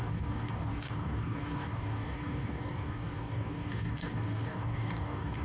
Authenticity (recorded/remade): remade